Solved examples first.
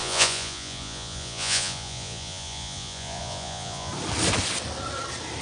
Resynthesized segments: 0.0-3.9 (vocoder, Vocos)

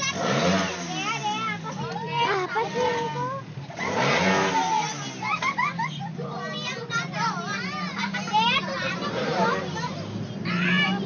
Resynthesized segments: 7.5-9.5 (vocoder, BigVGAN v2)

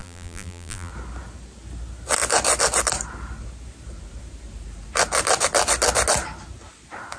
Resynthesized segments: 0.0-0.9 (vocoder, BigVGAN v2)

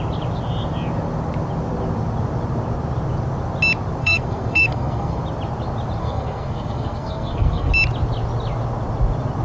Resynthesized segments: 4.0-5.2 (codec, SNAC); 6.0-7.7

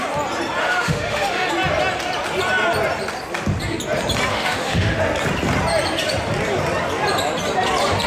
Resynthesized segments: 0.6-1.5 (autoencoder, DAC-VAE); 4.3-5.0

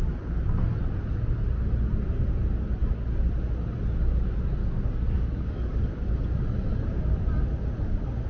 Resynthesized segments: 4.6-6.1 (codec, DAC)

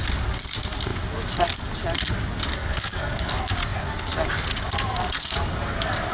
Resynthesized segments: 2.6-3.3 (codec, DAC)

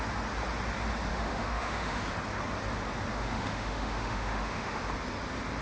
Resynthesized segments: 1.1-2.0 (autoencoder, DAC-VAE); 3.1-4.8